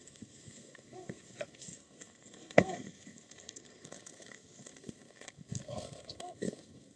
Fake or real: fake